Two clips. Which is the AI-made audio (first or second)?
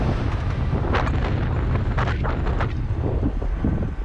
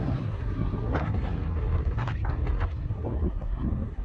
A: second